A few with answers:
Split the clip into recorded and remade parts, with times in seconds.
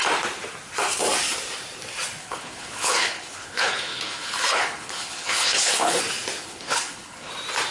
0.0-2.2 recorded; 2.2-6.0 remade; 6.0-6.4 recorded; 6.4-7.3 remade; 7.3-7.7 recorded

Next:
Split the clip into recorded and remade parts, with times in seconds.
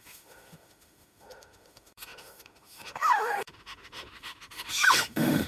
0.0-5.5 remade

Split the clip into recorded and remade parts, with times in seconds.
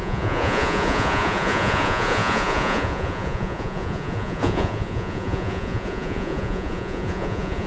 0.0-7.7 remade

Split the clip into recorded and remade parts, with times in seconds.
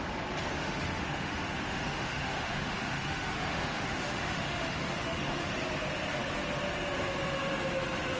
0.0-0.6 recorded; 0.6-5.5 remade; 5.5-8.2 recorded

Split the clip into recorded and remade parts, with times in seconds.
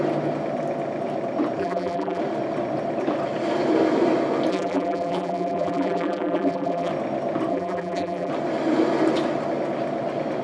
0.0-1.6 recorded; 1.6-2.2 remade; 2.2-4.5 recorded; 4.5-6.9 remade; 6.9-7.5 recorded; 7.5-8.3 remade; 8.3-10.4 recorded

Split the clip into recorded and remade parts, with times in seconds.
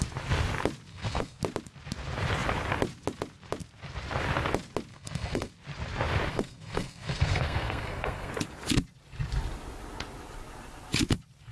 0.0-0.9 recorded; 0.9-1.4 remade; 1.4-4.9 recorded; 4.9-5.5 remade; 5.5-6.3 recorded; 6.3-8.3 remade; 8.3-11.5 recorded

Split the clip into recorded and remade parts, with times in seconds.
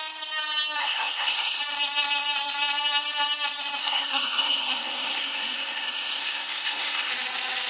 0.0-0.8 recorded; 0.8-1.6 remade; 1.6-3.8 recorded; 3.8-7.1 remade; 7.1-7.7 recorded